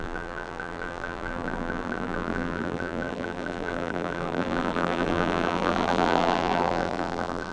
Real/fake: fake